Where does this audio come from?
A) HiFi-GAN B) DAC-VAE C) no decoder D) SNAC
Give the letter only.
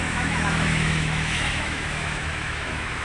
B